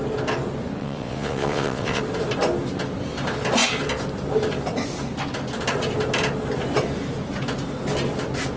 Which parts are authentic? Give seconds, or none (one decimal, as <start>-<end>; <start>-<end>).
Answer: 0.0-0.8; 2.0-8.6

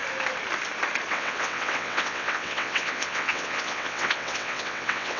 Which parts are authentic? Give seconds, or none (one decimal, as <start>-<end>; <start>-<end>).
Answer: 0.0-1.1

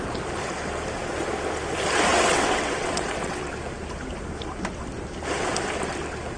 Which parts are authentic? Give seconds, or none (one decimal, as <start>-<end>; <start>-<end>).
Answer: 0.0-2.1; 3.5-6.4

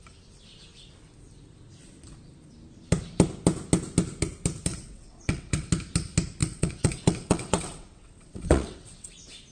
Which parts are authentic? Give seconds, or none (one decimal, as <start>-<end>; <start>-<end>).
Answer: 0.0-4.7; 5.7-6.4; 9.1-9.5

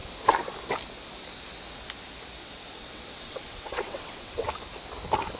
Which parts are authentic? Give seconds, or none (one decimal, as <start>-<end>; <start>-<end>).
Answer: 0.0-2.4; 4.5-5.4

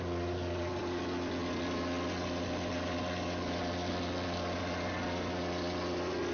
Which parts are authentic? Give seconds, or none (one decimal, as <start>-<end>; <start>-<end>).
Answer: 0.0-6.3